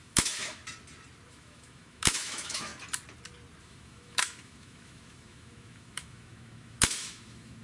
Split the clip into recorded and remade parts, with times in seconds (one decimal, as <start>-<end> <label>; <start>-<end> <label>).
0.0-0.6 remade; 0.6-1.3 recorded; 1.3-2.7 remade; 2.7-3.6 recorded; 3.6-7.6 remade